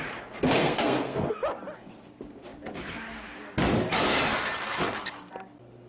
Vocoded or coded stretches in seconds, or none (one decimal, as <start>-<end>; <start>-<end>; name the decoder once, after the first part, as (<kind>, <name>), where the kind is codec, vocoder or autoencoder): 0.6-1.3 (codec, SNAC)